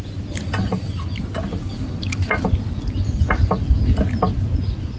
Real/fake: real